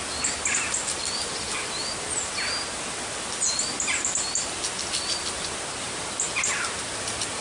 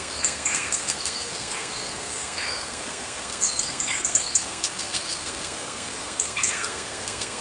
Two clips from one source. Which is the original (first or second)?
first